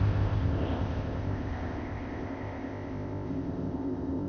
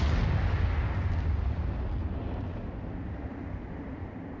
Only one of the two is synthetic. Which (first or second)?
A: first